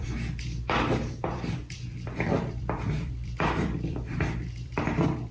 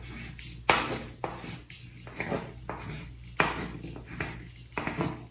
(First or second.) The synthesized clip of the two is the first